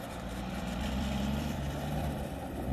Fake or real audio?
fake